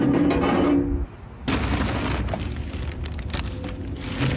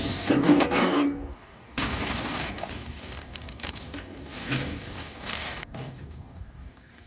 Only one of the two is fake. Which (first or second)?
second